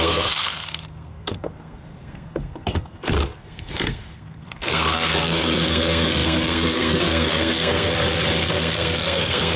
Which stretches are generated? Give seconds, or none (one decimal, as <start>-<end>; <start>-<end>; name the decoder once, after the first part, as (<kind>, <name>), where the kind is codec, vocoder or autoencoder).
0.0-7.9 (codec, SNAC); 8.5-9.6